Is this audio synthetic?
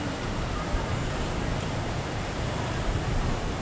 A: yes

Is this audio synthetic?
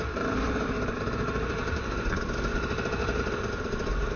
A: yes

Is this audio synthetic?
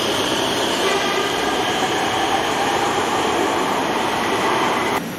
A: yes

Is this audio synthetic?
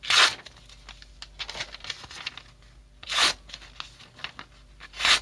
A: no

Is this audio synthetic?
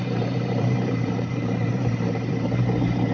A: yes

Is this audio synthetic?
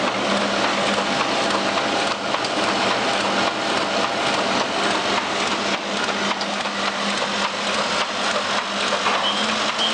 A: no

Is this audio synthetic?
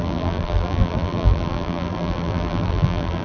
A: yes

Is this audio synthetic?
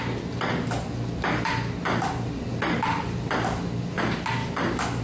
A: no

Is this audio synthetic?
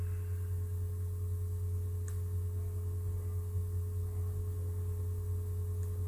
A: no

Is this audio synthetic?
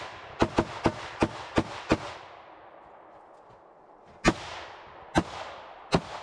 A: yes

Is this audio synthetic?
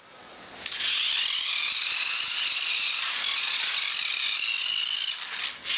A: no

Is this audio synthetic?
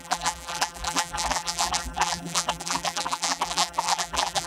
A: yes